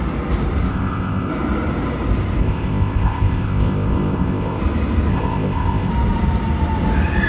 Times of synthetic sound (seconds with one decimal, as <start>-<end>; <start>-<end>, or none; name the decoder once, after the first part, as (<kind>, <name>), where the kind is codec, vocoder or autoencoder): 0.7-1.3 (codec, ZipCodec); 2.4-4.6; 5.1-5.9